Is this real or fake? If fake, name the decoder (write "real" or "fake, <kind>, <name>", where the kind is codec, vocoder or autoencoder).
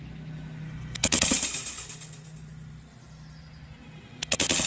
real